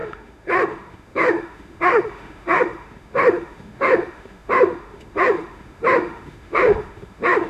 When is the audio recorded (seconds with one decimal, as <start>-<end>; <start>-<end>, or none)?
none